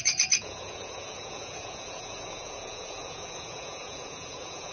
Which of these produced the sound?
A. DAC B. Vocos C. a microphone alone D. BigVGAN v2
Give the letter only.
B